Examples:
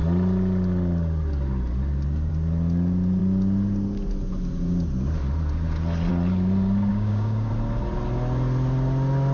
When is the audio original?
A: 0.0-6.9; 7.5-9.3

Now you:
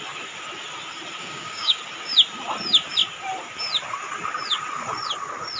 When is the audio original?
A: 0.0-1.2; 1.8-5.6

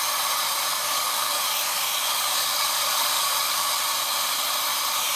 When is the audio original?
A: 0.0-0.7; 3.8-5.2

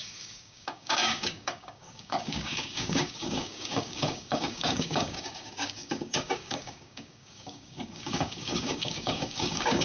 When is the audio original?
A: none

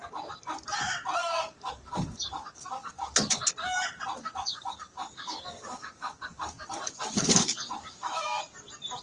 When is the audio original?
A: 0.0-1.2; 3.5-4.2; 8.4-9.0

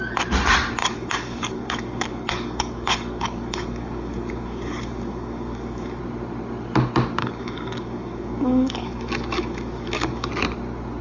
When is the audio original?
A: 0.0-0.8; 6.0-7.2; 10.3-11.0

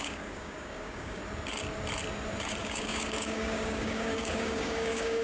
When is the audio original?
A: 1.2-2.4

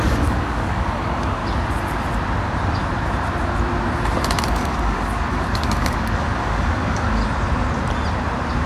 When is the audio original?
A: 1.4-4.4; 7.2-8.7